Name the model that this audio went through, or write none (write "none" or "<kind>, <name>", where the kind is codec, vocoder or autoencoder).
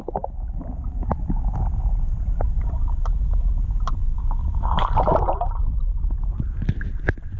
none